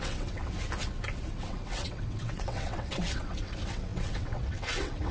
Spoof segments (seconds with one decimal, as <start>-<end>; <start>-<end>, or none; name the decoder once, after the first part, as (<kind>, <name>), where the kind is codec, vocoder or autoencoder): 0.0-0.4 (vocoder, WaveNeXt); 1.3-5.1